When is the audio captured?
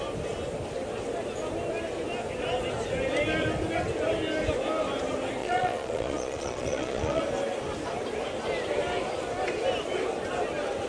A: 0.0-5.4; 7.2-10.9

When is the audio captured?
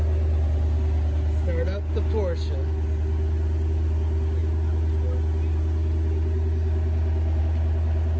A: 0.0-8.2